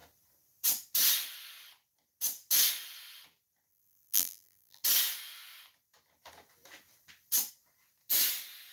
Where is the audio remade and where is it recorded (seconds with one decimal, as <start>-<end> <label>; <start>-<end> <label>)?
0.0-3.7 recorded; 3.7-4.8 remade; 4.8-8.7 recorded